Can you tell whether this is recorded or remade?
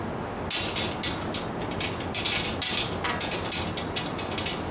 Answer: recorded